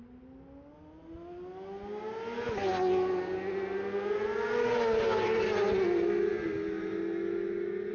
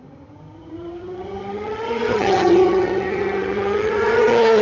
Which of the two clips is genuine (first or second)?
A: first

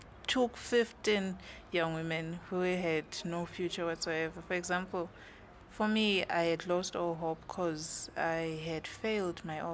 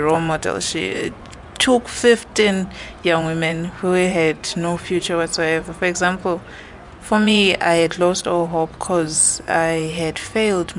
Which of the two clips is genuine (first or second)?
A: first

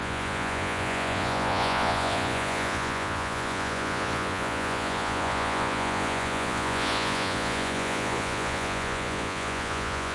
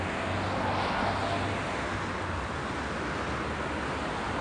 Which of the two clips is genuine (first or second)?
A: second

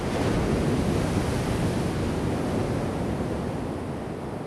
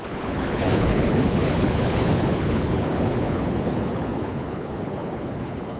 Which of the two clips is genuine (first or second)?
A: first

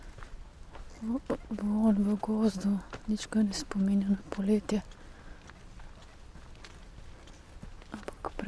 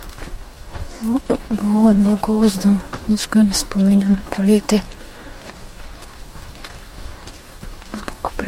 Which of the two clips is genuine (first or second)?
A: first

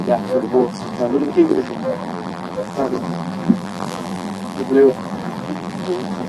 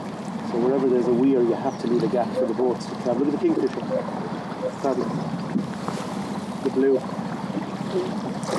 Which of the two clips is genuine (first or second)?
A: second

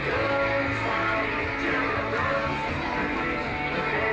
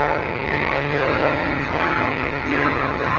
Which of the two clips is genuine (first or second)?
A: first